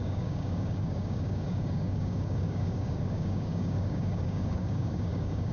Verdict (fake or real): fake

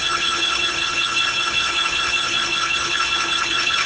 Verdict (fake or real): fake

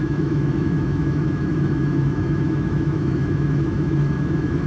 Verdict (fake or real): fake